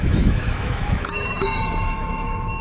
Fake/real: fake